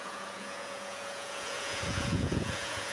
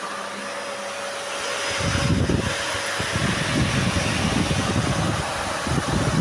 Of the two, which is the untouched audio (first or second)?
second